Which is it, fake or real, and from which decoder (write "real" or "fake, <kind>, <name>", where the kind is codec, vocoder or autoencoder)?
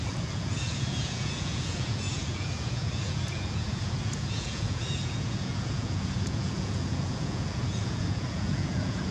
fake, vocoder, Vocos